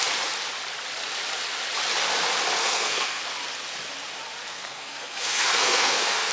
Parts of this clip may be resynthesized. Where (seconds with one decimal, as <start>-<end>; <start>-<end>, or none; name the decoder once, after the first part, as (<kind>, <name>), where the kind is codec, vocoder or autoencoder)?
2.6-3.2 (codec, SNAC); 4.5-6.3